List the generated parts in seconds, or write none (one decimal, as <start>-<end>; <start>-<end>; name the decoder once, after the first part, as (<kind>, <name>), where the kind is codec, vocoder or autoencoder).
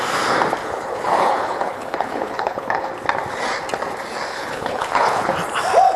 0.6-2.9 (codec, HILCodec); 4.3-5.3